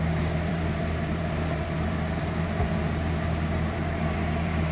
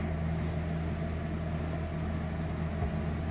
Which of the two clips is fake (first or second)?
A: first